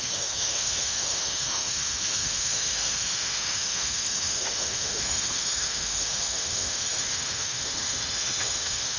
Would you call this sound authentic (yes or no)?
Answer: no